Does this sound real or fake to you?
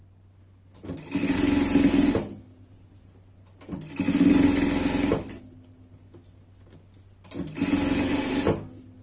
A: real